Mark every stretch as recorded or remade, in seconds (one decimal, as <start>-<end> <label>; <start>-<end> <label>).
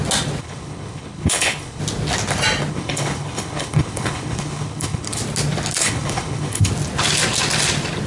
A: 0.0-0.4 recorded; 0.4-1.8 remade; 1.8-2.7 recorded; 2.7-5.2 remade; 5.2-5.8 recorded; 5.8-6.7 remade; 6.7-8.1 recorded